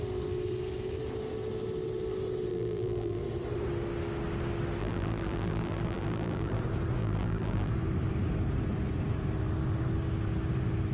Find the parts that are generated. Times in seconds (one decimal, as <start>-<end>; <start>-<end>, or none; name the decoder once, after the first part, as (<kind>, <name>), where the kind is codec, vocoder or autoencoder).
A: 2.5-3.2 (vocoder, BigVGAN v2); 4.8-6.6; 7.0-7.7